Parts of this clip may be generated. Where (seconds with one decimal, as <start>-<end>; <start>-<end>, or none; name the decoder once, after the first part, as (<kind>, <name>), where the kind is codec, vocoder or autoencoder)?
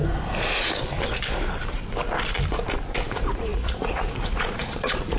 3.1-5.2 (vocoder, Vocos)